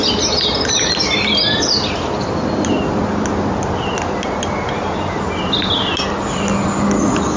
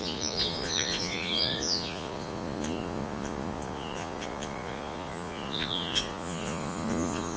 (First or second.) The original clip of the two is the first